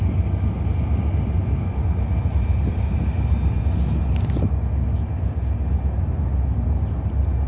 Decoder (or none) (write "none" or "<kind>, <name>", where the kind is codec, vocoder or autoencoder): none